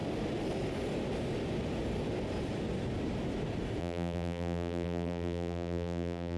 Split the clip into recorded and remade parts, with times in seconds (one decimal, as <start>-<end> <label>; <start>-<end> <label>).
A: 0.0-3.8 recorded; 3.8-6.4 remade